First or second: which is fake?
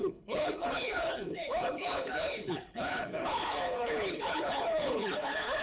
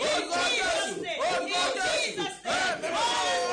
first